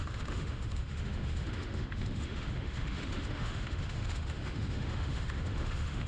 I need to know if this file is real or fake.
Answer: fake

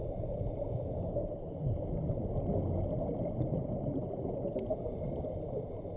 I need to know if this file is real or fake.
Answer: real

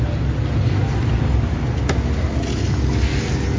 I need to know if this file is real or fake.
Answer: real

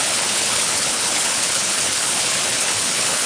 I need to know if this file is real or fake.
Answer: fake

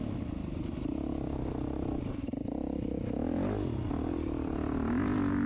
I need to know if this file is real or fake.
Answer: real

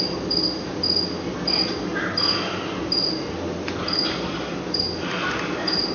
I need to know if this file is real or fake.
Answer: real